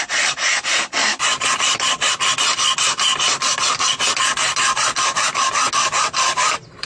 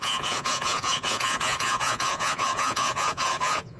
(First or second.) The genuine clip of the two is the first